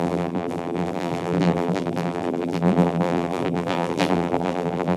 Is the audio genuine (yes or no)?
no